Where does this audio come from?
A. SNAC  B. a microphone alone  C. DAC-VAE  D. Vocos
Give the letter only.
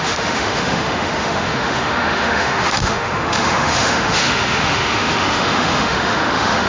C